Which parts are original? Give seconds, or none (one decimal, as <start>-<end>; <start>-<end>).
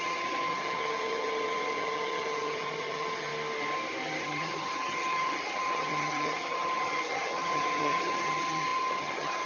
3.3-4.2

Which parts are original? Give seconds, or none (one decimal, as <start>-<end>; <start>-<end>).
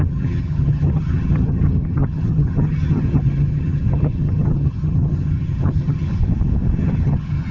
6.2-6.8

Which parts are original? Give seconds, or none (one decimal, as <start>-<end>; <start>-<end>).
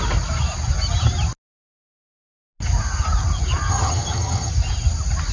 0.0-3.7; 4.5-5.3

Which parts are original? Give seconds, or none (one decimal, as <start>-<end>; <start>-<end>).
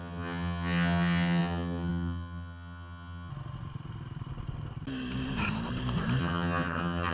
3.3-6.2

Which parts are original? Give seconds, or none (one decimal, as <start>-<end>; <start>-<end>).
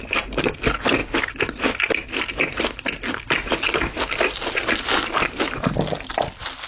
0.0-6.7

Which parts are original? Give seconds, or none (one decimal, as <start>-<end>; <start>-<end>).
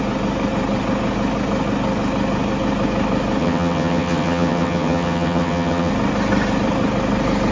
0.0-3.4; 5.9-7.5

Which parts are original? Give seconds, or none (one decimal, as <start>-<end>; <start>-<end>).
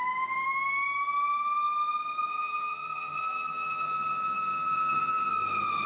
0.0-2.3; 5.3-5.9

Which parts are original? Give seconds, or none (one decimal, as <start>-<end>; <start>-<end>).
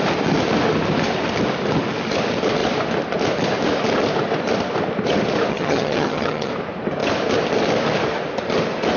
0.0-5.5; 6.5-9.0